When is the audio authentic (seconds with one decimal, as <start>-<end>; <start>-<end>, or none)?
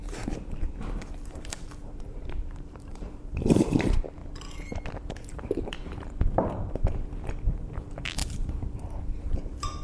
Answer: 0.0-0.6; 4.2-5.1; 8.2-9.0